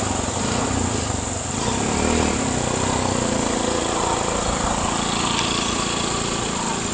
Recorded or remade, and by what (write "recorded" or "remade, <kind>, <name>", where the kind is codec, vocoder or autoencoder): recorded